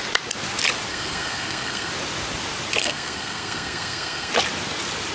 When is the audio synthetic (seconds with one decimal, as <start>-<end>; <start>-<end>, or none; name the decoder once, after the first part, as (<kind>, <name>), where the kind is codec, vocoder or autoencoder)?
0.9-1.9 (codec, SNAC); 2.8-4.3

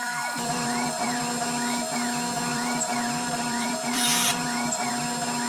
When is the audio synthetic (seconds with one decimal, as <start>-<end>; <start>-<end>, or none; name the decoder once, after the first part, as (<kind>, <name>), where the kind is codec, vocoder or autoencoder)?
0.0-1.2 (vocoder, BigVGAN v2); 2.5-4.9

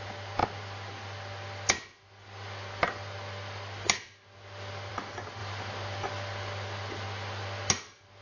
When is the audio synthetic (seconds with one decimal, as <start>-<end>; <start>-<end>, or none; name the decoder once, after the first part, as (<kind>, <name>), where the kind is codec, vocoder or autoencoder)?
none

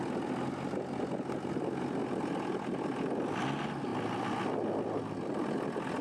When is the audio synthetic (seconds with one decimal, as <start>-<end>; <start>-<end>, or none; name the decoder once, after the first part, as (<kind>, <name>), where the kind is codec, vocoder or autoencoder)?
none

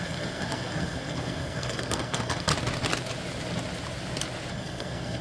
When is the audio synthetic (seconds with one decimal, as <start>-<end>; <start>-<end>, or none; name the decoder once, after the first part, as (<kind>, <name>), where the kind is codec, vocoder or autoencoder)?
0.0-2.5 (codec, SNAC); 4.5-5.2

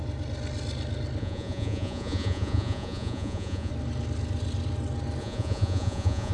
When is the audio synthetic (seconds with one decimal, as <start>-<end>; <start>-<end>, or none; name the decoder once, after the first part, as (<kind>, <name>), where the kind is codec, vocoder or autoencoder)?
1.2-3.7 (vocoder, Vocos); 5.2-6.3

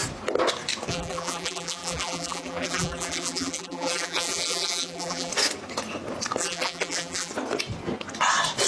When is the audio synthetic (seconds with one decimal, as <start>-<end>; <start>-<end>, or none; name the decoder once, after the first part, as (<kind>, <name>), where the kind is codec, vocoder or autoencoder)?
0.9-5.3 (vocoder, BigVGAN v2); 6.4-7.3